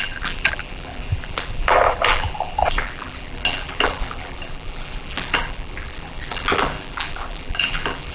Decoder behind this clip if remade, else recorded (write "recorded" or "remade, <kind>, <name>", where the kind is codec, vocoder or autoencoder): remade, vocoder, BigVGAN v2